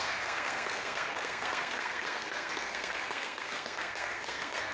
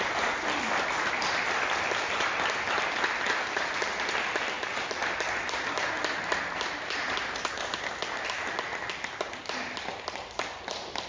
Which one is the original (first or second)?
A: second